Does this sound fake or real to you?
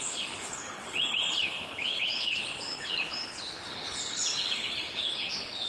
fake